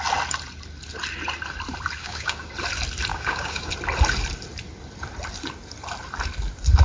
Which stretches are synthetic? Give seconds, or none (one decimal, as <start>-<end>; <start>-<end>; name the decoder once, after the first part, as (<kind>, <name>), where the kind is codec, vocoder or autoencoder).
2.0-2.5 (codec, DAC); 3.1-3.7